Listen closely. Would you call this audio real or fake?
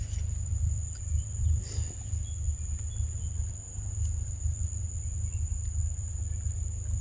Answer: real